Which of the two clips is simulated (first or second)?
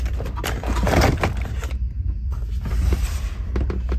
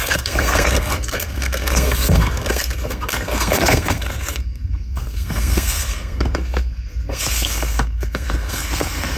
second